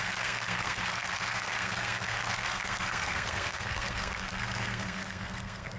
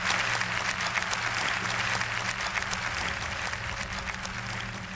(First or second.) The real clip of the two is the second